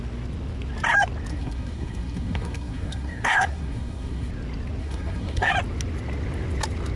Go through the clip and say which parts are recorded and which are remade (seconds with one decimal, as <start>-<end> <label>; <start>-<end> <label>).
0.0-1.3 recorded; 1.3-4.3 remade; 4.3-4.8 recorded; 4.8-5.5 remade; 5.5-7.0 recorded